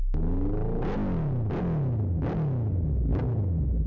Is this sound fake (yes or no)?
no